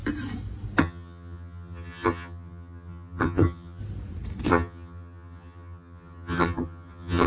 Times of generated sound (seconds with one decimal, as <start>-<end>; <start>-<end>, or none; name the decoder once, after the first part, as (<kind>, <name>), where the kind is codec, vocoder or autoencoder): 0.8-3.8 (vocoder, HiFi-GAN); 4.5-7.3